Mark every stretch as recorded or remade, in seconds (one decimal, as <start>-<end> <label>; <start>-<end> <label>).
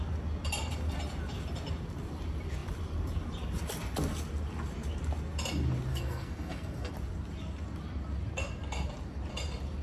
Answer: 0.0-5.9 recorded; 5.9-6.9 remade; 6.9-9.8 recorded